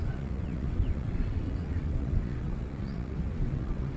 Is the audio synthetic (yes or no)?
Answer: yes